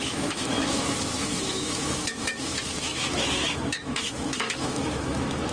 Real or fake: fake